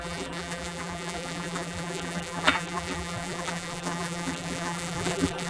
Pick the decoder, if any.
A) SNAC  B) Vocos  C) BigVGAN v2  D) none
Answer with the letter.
C